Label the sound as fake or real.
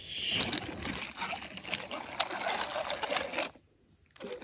real